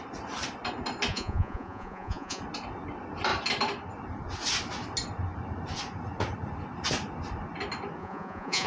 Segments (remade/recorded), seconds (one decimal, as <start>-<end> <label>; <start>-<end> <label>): 0.0-1.1 recorded; 1.1-2.4 remade; 2.4-8.0 recorded; 8.0-8.7 remade